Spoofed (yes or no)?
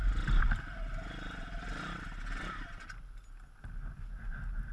no